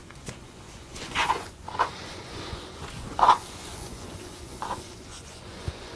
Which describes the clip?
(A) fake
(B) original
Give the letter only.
A